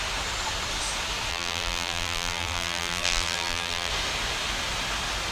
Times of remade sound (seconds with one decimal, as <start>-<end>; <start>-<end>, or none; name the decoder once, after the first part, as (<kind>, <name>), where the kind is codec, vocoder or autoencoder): 1.3-3.9 (vocoder, BigVGAN v2)